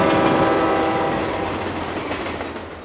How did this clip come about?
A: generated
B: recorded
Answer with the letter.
B